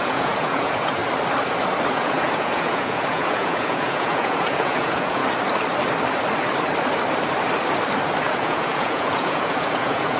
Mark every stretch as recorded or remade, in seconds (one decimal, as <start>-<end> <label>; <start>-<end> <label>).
0.0-1.0 remade; 1.0-1.9 recorded; 1.9-5.2 remade; 5.2-8.2 recorded; 8.2-10.2 remade